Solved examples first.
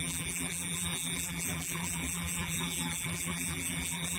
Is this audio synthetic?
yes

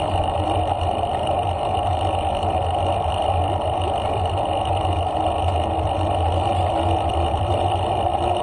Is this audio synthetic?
yes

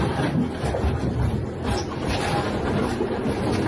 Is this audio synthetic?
yes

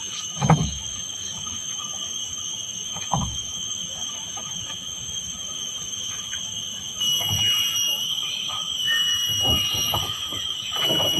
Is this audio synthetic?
yes